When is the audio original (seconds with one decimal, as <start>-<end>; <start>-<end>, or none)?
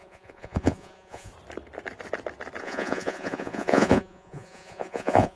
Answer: 1.3-2.6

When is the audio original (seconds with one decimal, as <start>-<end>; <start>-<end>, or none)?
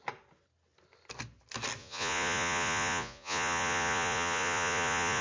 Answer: 0.0-1.8